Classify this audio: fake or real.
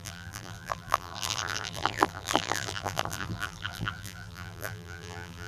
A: fake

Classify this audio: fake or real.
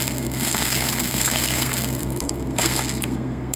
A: fake